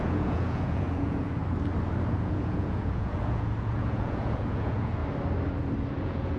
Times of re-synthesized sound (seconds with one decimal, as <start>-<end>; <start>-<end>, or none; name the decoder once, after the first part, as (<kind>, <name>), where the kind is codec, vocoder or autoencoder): 0.0-1.4 (vocoder, Vocos); 2.1-5.0; 5.9-6.4